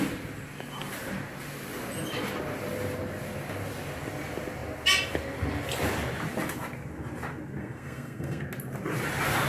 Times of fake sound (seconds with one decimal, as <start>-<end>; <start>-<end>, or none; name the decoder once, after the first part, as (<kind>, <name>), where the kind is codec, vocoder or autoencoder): 7.6-8.4 (codec, SNAC)